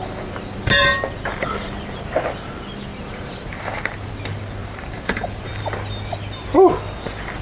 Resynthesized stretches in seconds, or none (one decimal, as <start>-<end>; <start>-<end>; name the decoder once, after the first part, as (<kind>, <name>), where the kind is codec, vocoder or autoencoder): 0.0-0.6 (vocoder, BigVGAN v2); 2.9-4.1; 4.6-5.6